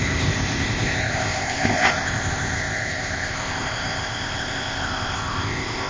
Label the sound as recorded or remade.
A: remade